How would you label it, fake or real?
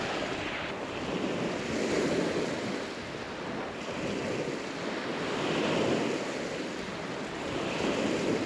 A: real